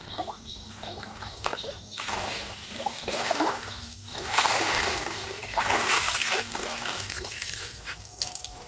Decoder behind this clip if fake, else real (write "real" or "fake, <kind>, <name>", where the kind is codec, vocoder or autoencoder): fake, codec, DAC